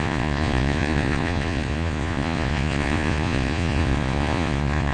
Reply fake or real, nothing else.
fake